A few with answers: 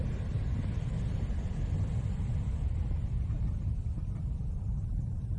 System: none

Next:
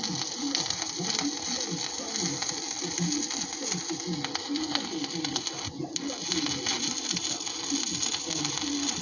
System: none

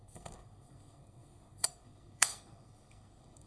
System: codec, SNAC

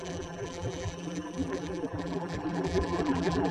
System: vocoder, BigVGAN v2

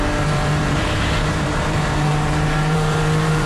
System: vocoder, BigVGAN v2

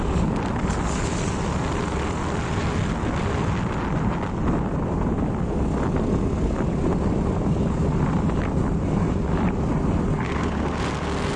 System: none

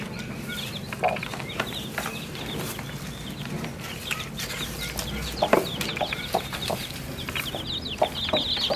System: vocoder, BigVGAN v2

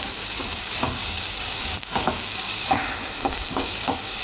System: codec, DAC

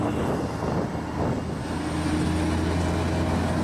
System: none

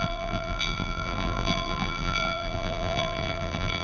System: vocoder, BigVGAN v2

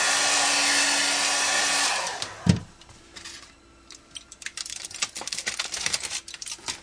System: none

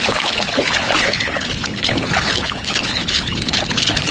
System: codec, HILCodec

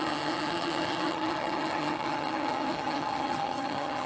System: vocoder, HiFi-GAN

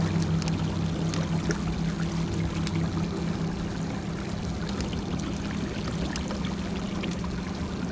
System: none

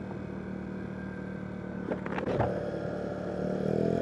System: none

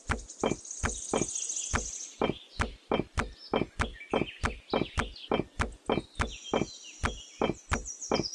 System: none